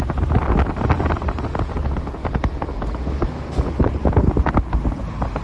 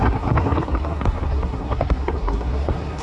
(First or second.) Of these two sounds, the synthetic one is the second